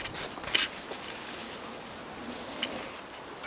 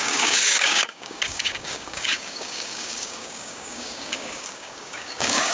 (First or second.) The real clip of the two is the first